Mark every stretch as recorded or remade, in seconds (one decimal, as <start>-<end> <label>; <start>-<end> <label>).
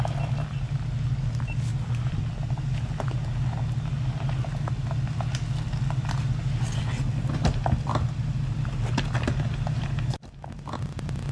0.0-1.7 recorded; 1.7-2.3 remade; 2.3-11.3 recorded